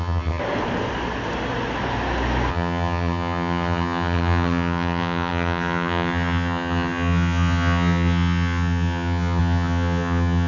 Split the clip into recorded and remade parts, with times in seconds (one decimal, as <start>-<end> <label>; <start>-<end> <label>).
0.0-0.4 remade; 0.4-2.5 recorded; 2.5-10.5 remade